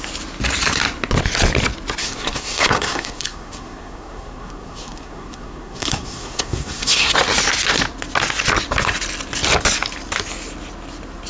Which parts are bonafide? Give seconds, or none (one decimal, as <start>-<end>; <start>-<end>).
0.0-2.0; 7.1-11.3